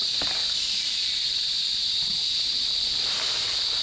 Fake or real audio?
fake